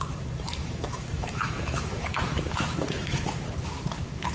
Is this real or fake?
fake